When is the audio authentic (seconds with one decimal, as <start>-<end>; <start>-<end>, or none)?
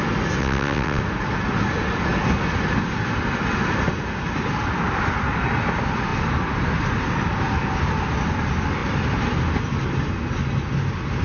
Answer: 0.0-0.4; 1.0-11.2